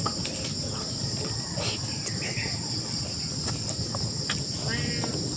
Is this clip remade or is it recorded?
recorded